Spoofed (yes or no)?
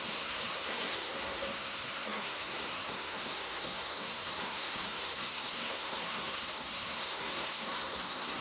yes